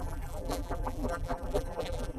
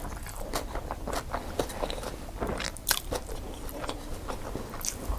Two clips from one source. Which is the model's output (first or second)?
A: first